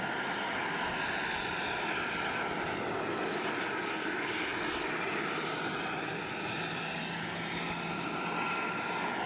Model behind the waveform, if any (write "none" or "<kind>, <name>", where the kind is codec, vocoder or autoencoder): none